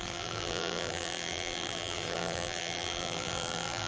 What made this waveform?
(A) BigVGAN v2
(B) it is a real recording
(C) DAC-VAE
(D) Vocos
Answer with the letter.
A